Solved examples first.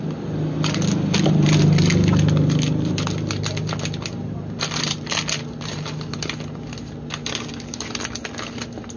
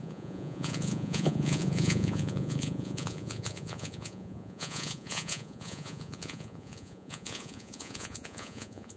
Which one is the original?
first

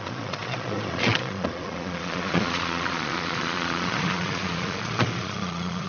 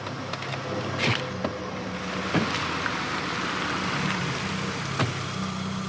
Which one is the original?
second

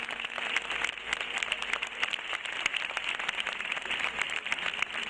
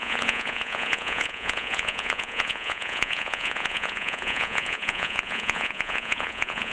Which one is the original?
first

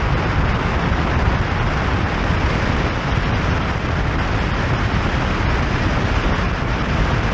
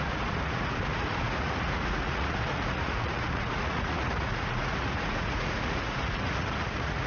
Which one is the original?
first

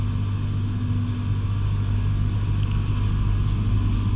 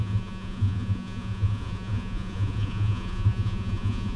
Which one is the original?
first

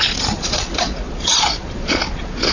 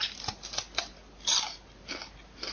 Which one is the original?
second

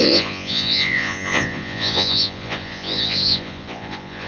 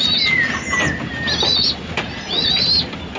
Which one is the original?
second